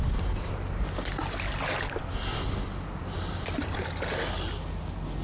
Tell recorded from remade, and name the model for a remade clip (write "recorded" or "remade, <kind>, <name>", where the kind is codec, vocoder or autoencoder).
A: recorded